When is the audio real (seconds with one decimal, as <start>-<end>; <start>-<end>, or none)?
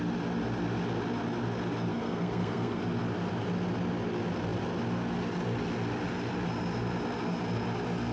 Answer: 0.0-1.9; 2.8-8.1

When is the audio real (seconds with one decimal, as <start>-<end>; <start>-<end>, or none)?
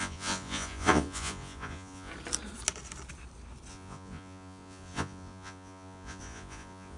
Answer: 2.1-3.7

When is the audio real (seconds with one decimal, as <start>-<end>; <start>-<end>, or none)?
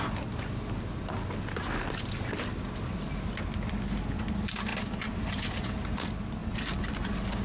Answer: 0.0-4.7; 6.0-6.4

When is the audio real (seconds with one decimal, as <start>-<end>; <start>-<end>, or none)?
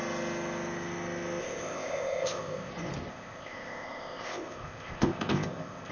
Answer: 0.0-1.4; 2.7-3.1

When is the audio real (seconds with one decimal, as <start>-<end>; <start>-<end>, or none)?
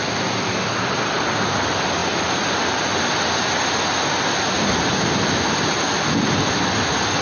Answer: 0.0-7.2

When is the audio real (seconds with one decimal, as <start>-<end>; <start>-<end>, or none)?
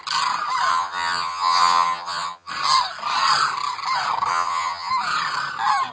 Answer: 0.0-0.7; 2.5-4.3; 4.9-5.9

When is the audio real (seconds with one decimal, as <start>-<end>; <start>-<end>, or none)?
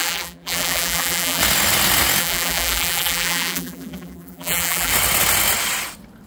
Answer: 1.4-2.2; 4.9-6.3